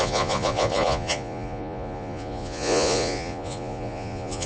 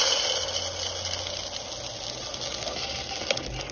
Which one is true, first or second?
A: second